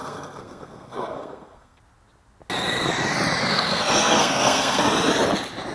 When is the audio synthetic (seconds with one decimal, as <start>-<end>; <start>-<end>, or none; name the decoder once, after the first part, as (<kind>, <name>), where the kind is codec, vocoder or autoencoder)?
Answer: 0.0-1.8 (codec, SNAC); 3.5-4.8